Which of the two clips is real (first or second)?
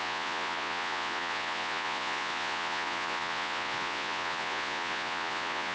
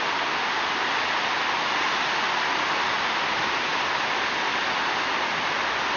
second